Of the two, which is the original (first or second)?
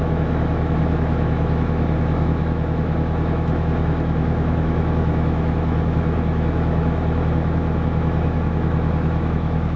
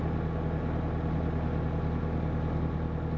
second